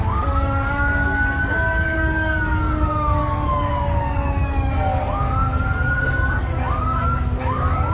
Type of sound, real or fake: fake